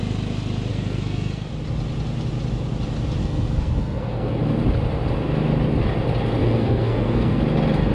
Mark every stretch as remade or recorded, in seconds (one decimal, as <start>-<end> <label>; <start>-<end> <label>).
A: 0.0-0.7 recorded; 0.7-1.5 remade; 1.5-3.2 recorded; 3.2-4.4 remade; 4.4-6.4 recorded; 6.4-7.4 remade; 7.4-7.9 recorded